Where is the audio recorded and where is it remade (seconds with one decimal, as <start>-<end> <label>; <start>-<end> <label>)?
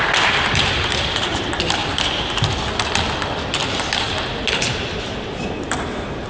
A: 0.0-1.8 remade; 1.8-4.5 recorded; 4.5-6.3 remade